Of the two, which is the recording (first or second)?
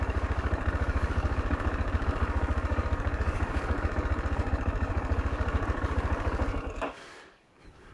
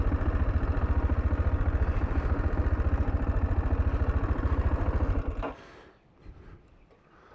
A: second